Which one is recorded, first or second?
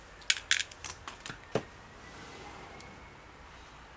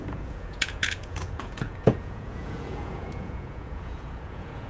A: first